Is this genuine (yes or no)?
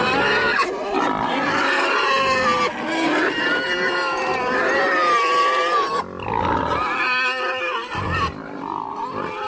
yes